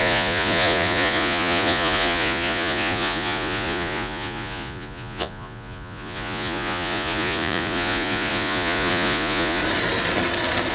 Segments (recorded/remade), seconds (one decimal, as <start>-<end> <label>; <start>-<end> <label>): 0.0-9.6 remade; 9.6-10.7 recorded